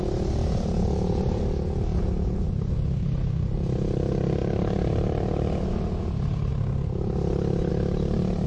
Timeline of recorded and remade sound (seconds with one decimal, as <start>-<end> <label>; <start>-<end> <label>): 0.0-0.4 recorded; 0.4-1.4 remade; 1.4-1.9 recorded; 1.9-2.7 remade; 2.7-4.4 recorded; 4.4-5.7 remade; 5.7-8.5 recorded